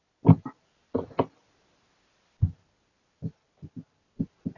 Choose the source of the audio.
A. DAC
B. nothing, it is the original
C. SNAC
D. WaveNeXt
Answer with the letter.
B